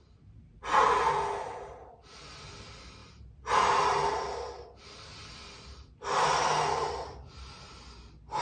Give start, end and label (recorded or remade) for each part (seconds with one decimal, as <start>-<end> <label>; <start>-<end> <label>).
0.0-3.0 recorded; 3.0-3.8 remade; 3.8-8.4 recorded